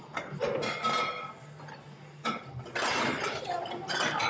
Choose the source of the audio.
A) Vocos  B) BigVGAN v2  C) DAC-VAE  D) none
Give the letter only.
D